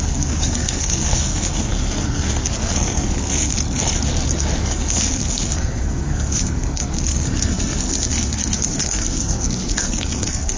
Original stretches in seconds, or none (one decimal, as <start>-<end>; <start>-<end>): 3.5-4.6